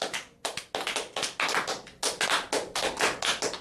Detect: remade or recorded recorded